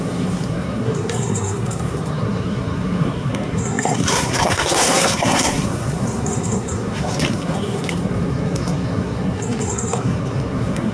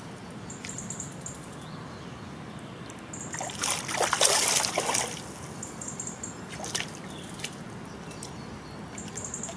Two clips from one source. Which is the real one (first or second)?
second